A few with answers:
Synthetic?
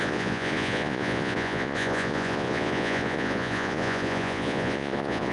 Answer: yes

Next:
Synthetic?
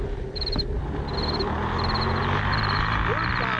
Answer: no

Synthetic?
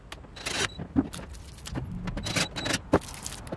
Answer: no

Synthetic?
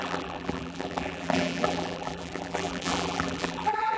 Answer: yes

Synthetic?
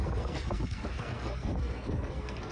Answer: yes